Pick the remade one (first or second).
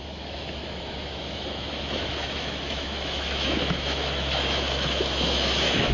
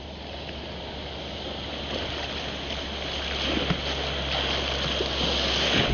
first